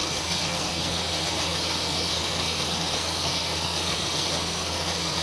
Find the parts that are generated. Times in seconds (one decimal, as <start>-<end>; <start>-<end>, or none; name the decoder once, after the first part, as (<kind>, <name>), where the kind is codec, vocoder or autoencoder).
0.0-5.2 (codec, SNAC)